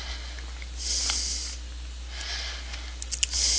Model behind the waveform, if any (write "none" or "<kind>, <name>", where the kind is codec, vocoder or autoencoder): none